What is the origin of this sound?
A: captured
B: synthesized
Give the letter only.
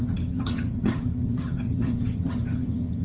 B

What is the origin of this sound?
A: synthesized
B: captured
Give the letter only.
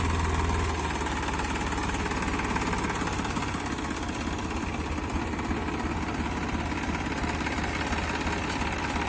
B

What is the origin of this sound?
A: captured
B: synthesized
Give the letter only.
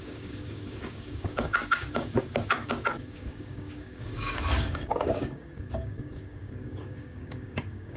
B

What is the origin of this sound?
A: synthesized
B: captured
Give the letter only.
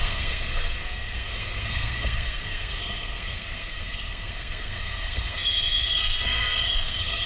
A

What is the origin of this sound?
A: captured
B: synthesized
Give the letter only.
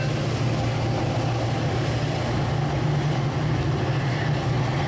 A